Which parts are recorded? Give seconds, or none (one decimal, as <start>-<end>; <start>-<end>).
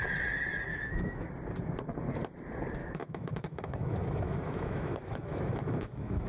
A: 0.0-0.7; 1.3-2.8